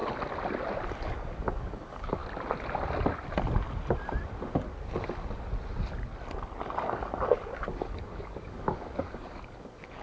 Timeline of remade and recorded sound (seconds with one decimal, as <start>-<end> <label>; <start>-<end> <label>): 0.0-1.0 recorded; 1.0-2.2 remade; 2.2-6.8 recorded; 6.8-10.0 remade